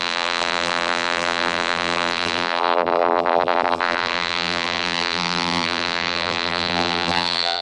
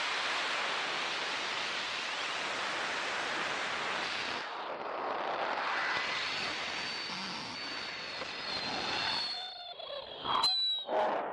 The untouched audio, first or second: second